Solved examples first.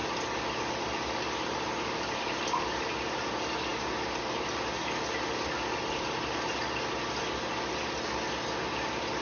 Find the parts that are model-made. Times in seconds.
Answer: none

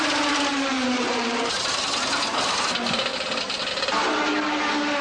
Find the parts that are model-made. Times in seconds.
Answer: 0.5-1.6 (vocoder, BigVGAN v2); 3.1-3.8

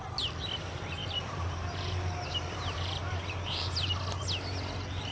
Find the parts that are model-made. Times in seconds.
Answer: 1.0-3.9 (vocoder, BigVGAN v2)

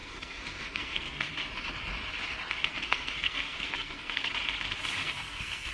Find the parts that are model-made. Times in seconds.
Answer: 0.0-1.3 (codec, SNAC); 2.7-4.3; 5.0-5.7